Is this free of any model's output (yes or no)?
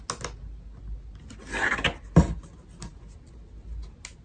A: yes